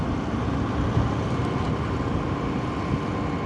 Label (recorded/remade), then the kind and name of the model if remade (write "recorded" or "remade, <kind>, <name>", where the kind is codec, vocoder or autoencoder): recorded